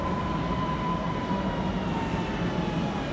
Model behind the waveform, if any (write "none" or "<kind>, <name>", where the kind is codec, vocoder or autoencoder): none